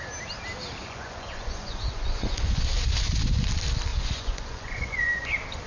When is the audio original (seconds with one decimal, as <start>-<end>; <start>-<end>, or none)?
0.0-0.8; 2.6-3.9; 5.3-5.7